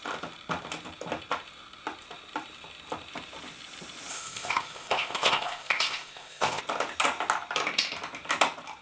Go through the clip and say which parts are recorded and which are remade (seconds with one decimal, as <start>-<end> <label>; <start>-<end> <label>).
0.0-4.1 recorded; 4.1-6.6 remade; 6.6-8.8 recorded